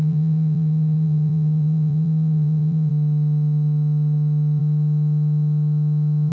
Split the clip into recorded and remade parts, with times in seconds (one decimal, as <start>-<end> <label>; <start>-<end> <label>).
0.0-2.9 remade; 2.9-6.3 recorded

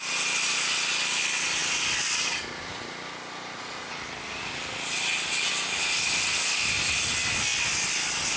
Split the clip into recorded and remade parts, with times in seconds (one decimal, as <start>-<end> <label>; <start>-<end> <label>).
0.0-1.6 recorded; 1.6-5.5 remade; 5.5-7.5 recorded; 7.5-8.4 remade

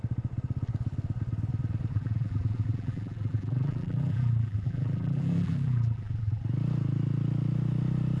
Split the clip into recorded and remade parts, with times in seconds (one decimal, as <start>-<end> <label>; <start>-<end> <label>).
0.0-1.9 recorded; 1.9-6.4 remade; 6.4-8.2 recorded

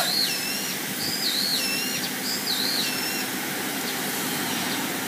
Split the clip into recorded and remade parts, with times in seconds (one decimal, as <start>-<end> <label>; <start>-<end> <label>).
0.0-5.1 recorded

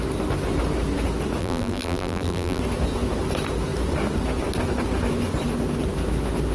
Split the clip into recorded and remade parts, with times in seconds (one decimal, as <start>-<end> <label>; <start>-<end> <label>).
0.0-1.4 recorded; 1.4-2.6 remade; 2.6-6.5 recorded

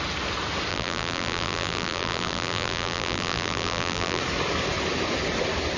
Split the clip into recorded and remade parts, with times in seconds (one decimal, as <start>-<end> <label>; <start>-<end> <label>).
0.0-0.7 recorded; 0.7-4.2 remade; 4.2-5.8 recorded

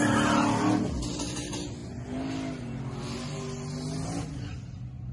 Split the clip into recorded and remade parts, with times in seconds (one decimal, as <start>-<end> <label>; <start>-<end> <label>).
0.0-5.1 recorded

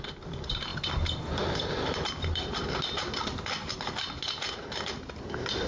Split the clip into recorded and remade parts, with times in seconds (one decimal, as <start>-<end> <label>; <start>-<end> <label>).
0.0-0.7 recorded; 0.7-4.1 remade; 4.1-5.7 recorded